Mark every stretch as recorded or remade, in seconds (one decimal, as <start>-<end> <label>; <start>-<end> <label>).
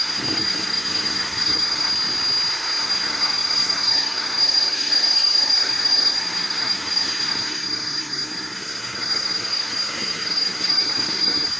0.0-1.9 remade; 1.9-2.8 recorded; 2.8-11.6 remade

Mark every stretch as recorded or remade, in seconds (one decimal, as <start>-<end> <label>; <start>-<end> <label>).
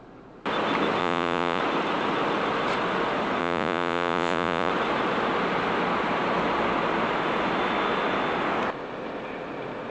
0.0-1.0 recorded; 1.0-1.6 remade; 1.6-3.4 recorded; 3.4-4.7 remade; 4.7-9.9 recorded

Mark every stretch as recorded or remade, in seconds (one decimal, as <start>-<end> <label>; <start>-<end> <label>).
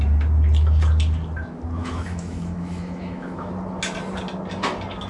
0.0-1.8 recorded; 1.8-3.5 remade; 3.5-5.1 recorded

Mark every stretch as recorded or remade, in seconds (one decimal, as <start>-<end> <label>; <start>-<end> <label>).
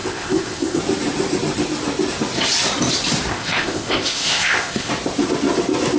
0.0-0.8 remade; 0.8-3.3 recorded; 3.3-4.9 remade; 4.9-6.0 recorded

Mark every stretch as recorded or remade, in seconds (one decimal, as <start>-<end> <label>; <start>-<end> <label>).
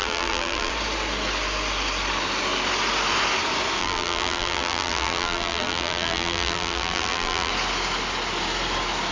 0.0-0.7 remade; 0.7-3.8 recorded; 3.8-7.5 remade; 7.5-9.1 recorded